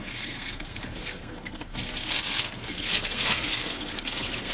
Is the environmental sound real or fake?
fake